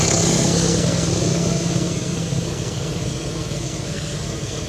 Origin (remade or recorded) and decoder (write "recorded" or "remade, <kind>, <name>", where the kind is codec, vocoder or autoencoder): remade, codec, SNAC